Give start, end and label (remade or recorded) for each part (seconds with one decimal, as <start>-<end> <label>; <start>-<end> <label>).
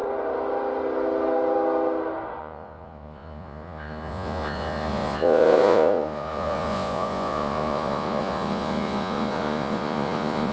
0.0-2.4 recorded; 2.4-10.5 remade